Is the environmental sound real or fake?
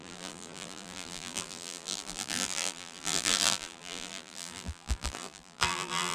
fake